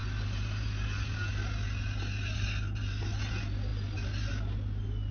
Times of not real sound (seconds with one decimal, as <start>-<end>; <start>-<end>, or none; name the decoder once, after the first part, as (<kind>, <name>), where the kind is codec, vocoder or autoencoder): none